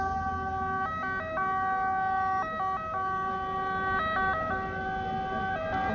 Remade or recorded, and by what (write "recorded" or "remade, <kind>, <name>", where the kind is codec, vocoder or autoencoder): recorded